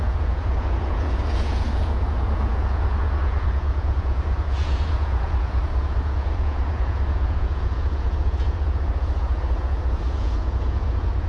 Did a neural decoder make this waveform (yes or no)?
yes